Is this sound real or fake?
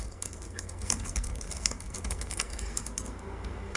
fake